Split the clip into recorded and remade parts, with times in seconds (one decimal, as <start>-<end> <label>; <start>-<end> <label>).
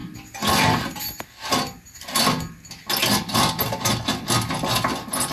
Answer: 0.0-5.3 recorded